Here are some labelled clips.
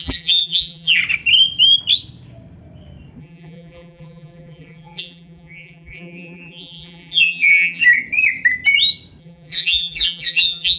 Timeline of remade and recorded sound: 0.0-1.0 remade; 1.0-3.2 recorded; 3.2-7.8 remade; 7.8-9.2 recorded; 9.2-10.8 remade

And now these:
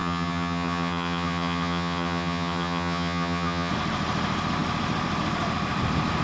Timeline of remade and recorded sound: 0.0-3.7 remade; 3.7-6.2 recorded

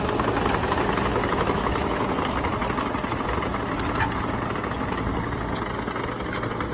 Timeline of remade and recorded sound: 0.0-1.1 recorded; 1.1-1.9 remade; 1.9-6.7 recorded

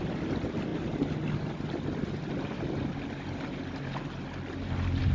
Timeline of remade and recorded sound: 0.0-5.1 recorded

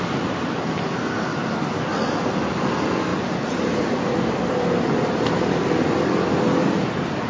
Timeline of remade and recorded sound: 0.0-7.3 recorded

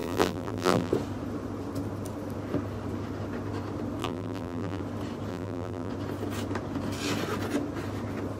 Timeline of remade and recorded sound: 0.0-0.9 remade; 0.9-4.0 recorded; 4.0-4.8 remade; 4.8-5.3 recorded; 5.3-5.9 remade; 5.9-8.4 recorded

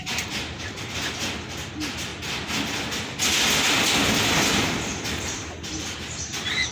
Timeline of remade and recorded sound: 0.0-2.1 remade; 2.1-5.2 recorded; 5.2-6.7 remade